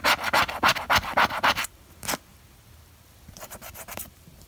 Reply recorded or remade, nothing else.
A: remade